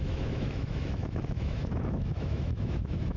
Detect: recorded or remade remade